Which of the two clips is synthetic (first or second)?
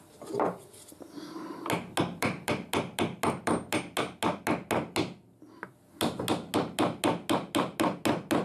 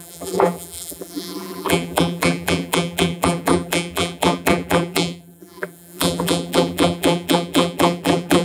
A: second